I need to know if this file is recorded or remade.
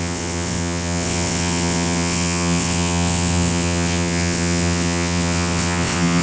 remade